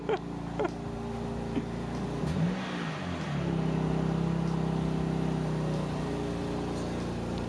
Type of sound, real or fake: real